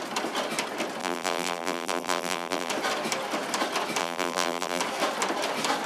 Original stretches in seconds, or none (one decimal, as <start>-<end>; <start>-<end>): 0.0-1.0; 2.7-4.0; 4.8-5.9